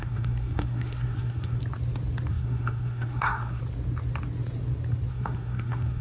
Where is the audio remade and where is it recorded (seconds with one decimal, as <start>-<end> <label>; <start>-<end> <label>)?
0.0-1.6 remade; 1.6-2.3 recorded; 2.3-3.6 remade; 3.6-5.1 recorded; 5.1-6.0 remade